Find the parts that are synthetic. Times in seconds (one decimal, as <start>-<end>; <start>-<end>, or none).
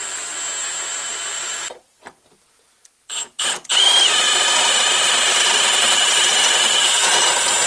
1.1-1.8